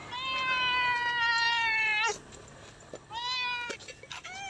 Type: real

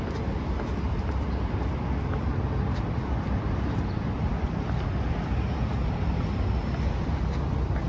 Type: real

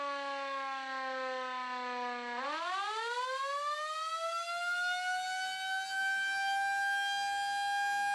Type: real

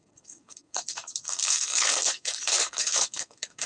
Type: fake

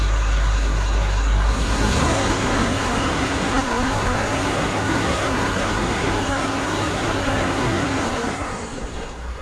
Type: fake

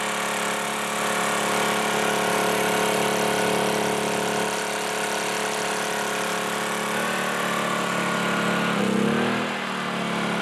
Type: real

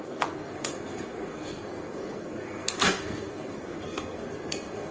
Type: fake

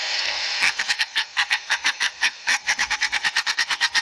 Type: fake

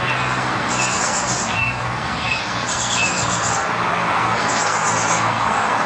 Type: fake